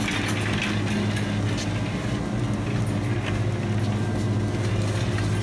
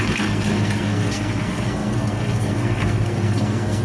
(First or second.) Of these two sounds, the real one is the first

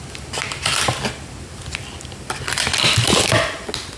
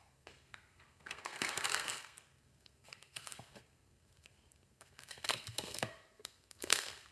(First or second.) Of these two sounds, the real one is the first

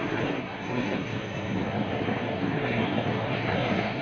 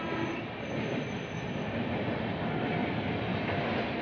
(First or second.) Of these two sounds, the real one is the second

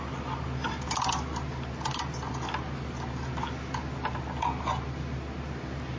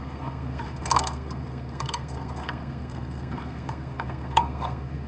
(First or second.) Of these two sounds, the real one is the first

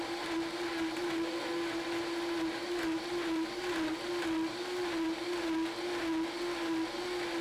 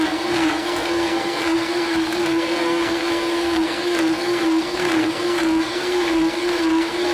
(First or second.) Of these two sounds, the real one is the first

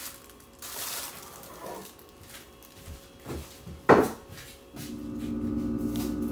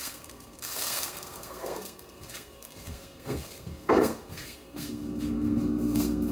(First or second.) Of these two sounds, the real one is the first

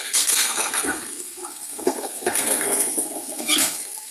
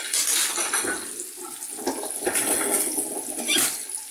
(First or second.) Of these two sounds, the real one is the second